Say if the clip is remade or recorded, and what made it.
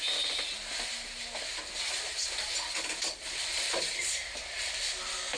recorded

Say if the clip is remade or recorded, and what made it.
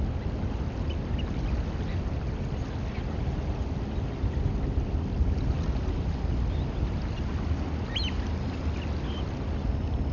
recorded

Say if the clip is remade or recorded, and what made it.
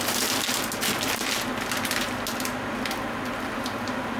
recorded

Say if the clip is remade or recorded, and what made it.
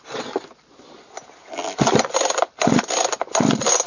recorded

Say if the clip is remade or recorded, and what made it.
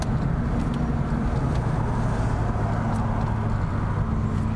recorded